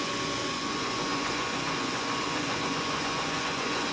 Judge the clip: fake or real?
fake